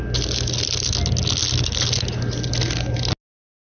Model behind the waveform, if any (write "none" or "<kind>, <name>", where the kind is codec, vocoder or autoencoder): none